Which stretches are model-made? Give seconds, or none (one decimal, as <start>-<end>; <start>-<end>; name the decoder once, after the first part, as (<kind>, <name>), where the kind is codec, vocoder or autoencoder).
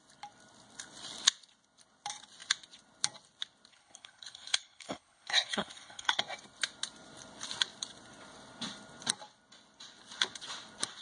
3.7-6.2 (codec, HILCodec)